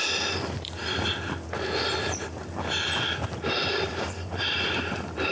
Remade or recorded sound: recorded